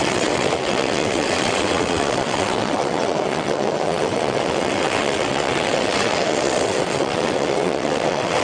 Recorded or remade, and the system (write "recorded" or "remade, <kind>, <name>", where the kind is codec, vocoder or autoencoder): remade, vocoder, WaveNeXt